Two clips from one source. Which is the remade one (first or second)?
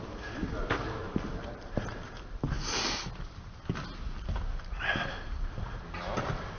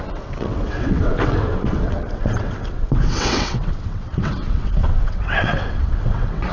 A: second